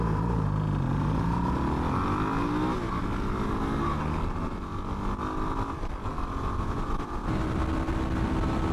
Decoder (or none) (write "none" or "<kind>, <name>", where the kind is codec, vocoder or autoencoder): none